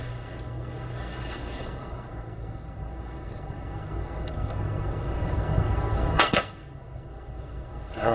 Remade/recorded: remade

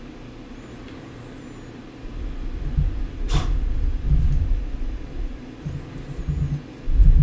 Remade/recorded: recorded